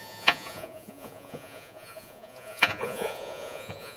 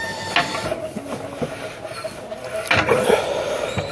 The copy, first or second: first